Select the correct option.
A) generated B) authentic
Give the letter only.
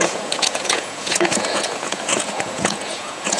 A